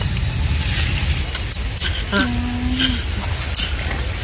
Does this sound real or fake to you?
real